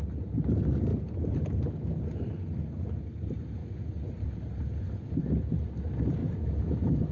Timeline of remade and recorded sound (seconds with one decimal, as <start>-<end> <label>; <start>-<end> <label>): 0.0-0.9 recorded; 0.9-2.0 remade; 2.0-6.2 recorded; 6.2-7.1 remade